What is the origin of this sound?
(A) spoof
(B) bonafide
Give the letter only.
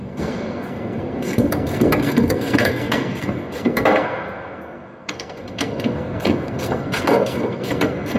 A